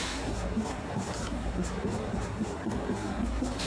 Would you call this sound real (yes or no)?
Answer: no